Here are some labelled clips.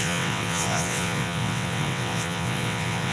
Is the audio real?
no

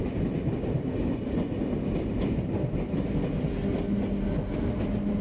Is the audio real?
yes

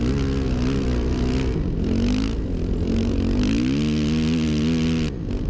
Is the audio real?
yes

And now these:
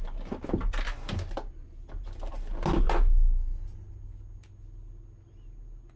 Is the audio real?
yes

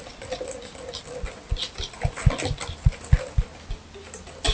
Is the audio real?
yes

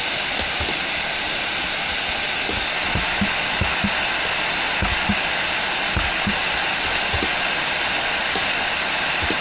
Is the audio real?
yes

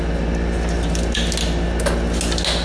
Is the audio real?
yes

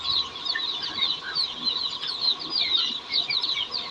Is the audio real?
yes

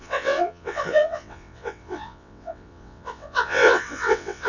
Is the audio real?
no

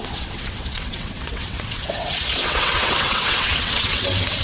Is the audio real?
no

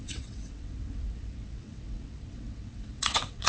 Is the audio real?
no